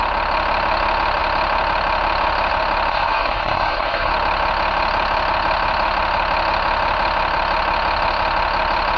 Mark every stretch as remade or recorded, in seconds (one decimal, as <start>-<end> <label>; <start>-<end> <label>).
0.0-2.9 recorded; 2.9-4.1 remade; 4.1-9.0 recorded